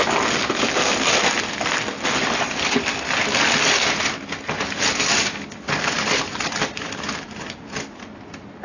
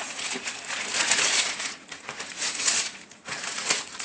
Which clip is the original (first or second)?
first